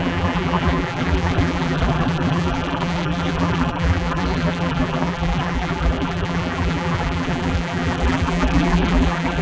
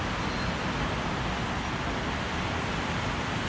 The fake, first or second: first